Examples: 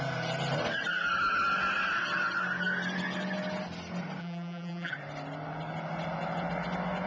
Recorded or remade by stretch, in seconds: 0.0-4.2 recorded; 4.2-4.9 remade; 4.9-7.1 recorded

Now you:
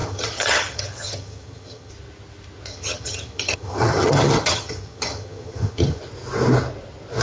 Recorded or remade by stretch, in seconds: 0.0-1.9 remade; 1.9-2.7 recorded; 2.7-6.0 remade; 6.0-7.2 recorded

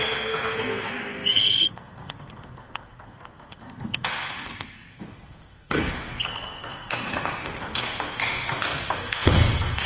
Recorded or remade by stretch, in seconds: 0.0-9.9 remade

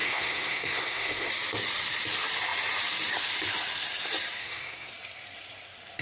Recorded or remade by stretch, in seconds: 0.0-1.3 remade; 1.3-4.4 recorded; 4.4-4.9 remade; 4.9-6.0 recorded

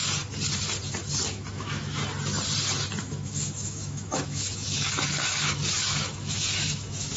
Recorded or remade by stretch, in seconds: 0.0-1.2 recorded; 1.2-2.0 remade; 2.0-3.0 recorded; 3.0-7.2 remade